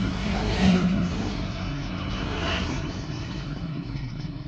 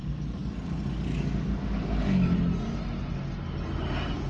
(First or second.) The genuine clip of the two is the second